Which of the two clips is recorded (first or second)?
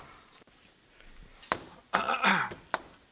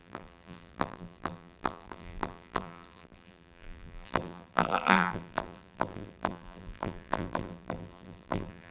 first